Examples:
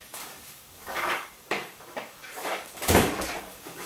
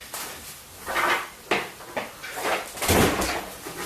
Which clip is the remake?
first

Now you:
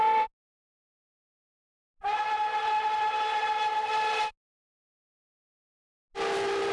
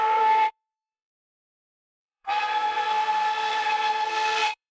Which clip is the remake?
second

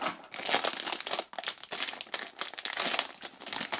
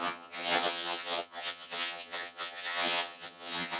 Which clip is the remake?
second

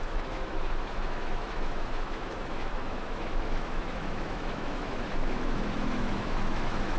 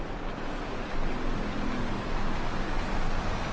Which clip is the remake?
first